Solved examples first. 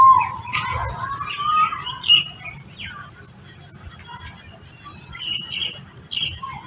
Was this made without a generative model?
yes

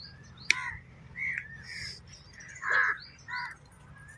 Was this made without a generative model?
yes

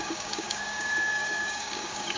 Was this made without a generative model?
no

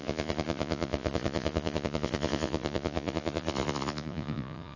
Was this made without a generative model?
no